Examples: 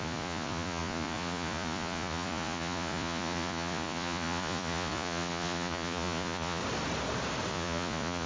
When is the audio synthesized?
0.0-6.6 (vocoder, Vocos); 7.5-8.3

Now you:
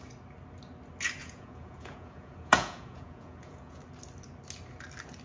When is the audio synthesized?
1.2-3.8 (vocoder, Vocos)

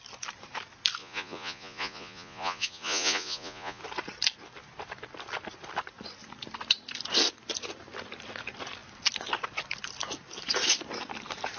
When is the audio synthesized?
1.0-3.8 (vocoder, Vocos)

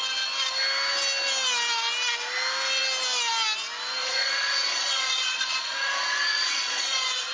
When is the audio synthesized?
4.0-7.3 (vocoder, Vocos)

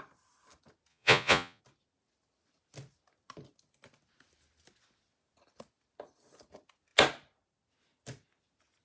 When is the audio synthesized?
0.9-1.6 (vocoder, Vocos)

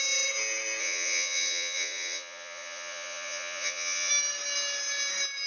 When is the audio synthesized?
0.8-4.1 (vocoder, Vocos)